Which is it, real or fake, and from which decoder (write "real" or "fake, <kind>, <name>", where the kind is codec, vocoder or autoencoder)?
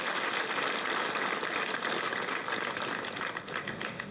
real